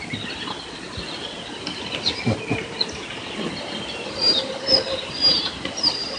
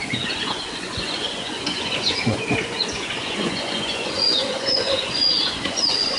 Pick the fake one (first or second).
second